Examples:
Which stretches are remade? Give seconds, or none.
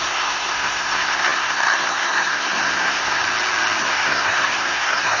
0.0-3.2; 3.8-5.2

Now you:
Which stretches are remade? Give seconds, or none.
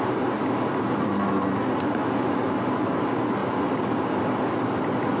none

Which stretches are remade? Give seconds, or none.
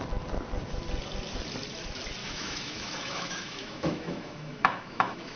2.2-5.4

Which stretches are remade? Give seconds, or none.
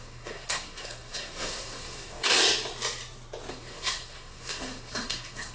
0.0-2.4; 3.5-5.5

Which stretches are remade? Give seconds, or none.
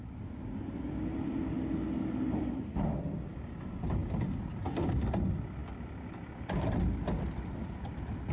none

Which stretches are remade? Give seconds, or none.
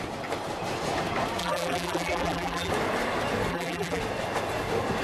1.4-2.7; 3.5-4.0